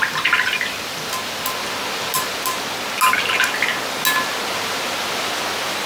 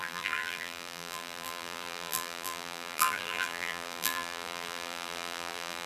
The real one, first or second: first